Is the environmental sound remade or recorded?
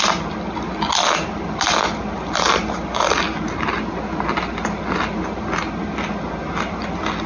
recorded